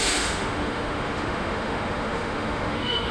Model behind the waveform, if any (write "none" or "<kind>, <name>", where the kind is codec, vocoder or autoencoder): autoencoder, DAC-VAE